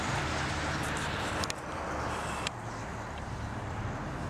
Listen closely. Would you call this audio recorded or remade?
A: remade